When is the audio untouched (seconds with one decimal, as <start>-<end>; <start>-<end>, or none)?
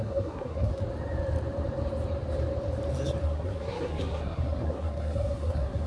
0.7-3.2